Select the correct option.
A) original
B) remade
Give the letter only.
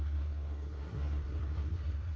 B